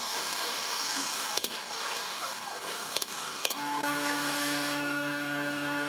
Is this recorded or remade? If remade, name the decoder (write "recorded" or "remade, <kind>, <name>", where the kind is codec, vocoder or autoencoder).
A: remade, codec, DAC